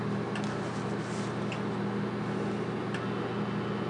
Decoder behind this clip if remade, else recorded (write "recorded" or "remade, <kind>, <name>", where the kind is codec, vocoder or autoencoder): recorded